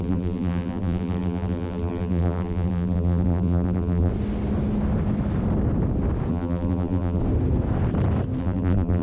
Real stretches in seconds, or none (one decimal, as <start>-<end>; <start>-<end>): 4.1-6.3; 7.2-8.4